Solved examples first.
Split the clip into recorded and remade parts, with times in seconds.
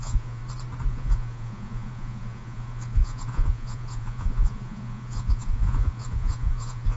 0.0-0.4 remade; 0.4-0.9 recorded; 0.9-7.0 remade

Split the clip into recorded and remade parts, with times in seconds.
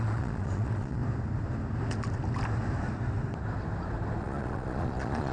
0.0-1.0 remade; 1.0-4.2 recorded; 4.2-5.3 remade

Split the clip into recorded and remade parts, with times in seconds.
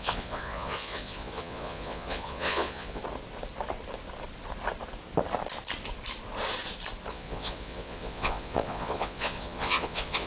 0.0-3.0 remade; 3.0-7.1 recorded; 7.1-10.3 remade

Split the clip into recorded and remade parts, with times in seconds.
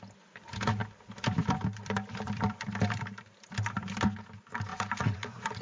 0.0-4.7 recorded; 4.7-5.6 remade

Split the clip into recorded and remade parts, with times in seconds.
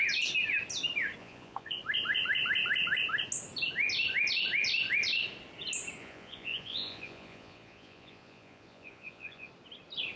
0.0-1.2 recorded; 1.2-1.8 remade; 1.8-6.0 recorded; 6.0-9.5 remade; 9.5-10.2 recorded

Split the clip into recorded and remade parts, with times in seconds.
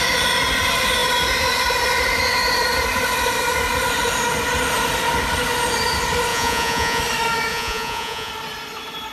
0.0-6.3 recorded; 6.3-7.0 remade; 7.0-7.5 recorded; 7.5-8.3 remade; 8.3-9.1 recorded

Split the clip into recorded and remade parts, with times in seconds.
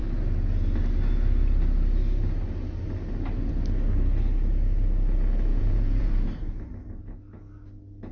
0.0-5.5 recorded; 5.5-6.1 remade; 6.1-8.1 recorded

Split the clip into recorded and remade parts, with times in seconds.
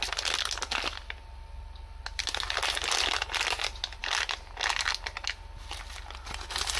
0.0-6.8 recorded